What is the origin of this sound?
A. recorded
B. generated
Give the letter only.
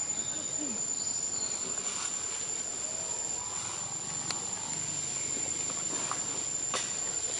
A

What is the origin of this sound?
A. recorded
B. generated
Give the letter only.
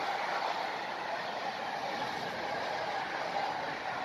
A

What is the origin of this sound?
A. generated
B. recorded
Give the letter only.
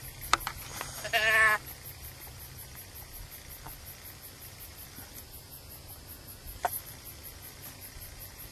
B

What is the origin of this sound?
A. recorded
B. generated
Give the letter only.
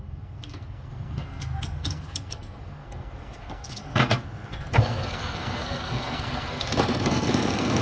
B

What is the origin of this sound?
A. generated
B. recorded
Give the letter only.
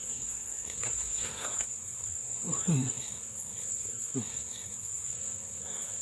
A